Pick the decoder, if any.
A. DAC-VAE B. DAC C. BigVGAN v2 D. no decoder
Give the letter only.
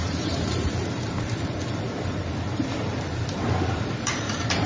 C